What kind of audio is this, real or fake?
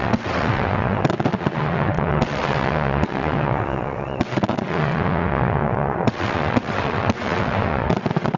fake